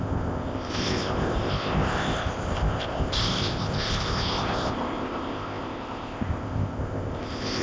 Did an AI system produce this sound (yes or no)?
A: yes